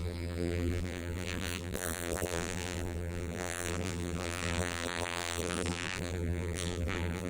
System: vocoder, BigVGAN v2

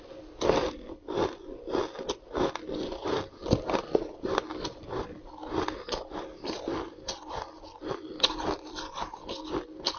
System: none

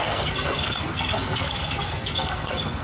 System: codec, SNAC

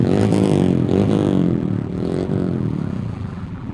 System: vocoder, BigVGAN v2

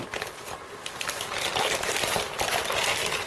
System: none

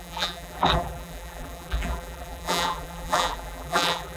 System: vocoder, BigVGAN v2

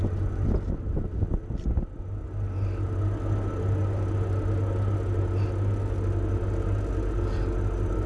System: none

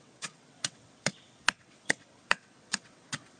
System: vocoder, WaveNeXt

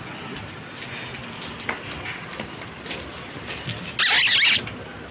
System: none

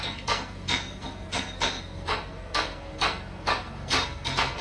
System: codec, SNAC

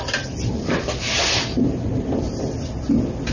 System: none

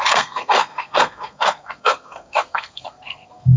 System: codec, SNAC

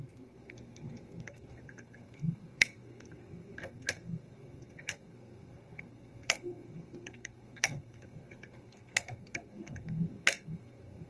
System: codec, SNAC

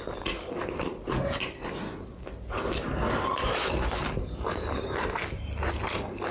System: none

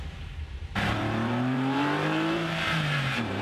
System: vocoder, BigVGAN v2